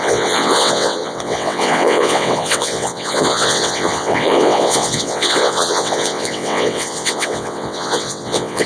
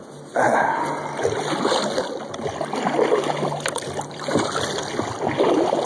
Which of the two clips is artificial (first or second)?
first